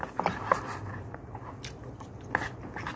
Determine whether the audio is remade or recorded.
recorded